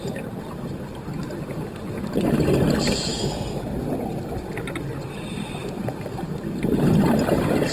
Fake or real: real